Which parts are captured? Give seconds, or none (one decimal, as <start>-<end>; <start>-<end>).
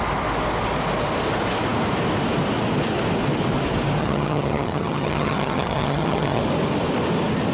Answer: 0.0-4.0; 6.4-7.5